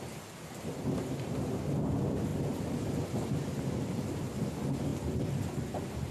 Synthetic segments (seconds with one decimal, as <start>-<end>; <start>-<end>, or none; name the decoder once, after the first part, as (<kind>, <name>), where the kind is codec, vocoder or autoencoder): none